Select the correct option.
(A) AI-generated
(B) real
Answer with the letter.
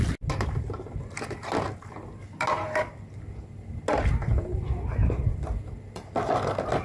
B